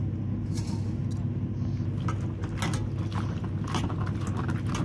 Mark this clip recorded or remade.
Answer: recorded